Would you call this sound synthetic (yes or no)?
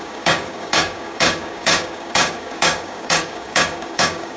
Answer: yes